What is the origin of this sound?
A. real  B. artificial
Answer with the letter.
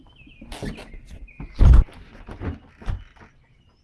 A